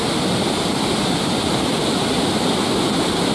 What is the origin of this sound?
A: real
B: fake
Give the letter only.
B